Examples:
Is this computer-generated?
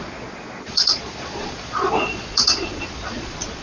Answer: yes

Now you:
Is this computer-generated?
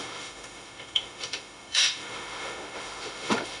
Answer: yes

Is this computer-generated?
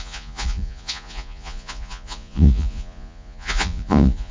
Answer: yes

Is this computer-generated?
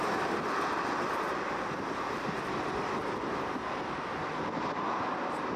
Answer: no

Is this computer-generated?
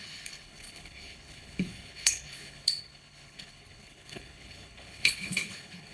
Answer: yes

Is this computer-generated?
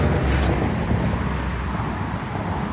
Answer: no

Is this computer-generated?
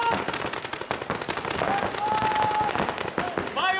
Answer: no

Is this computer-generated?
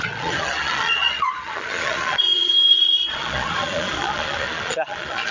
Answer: yes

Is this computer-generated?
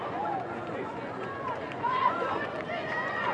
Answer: yes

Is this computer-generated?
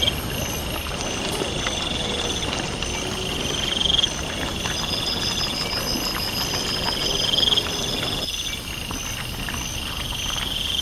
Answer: no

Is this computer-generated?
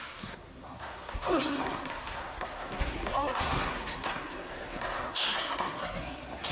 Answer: yes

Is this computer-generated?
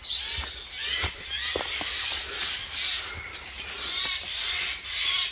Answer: no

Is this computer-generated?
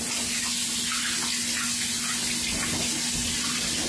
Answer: no